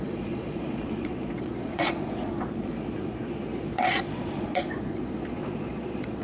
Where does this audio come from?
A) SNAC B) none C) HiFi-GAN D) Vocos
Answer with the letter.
D